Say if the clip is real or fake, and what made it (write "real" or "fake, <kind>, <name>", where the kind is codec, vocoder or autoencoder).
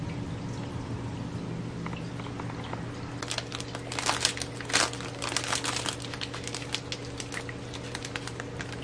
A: real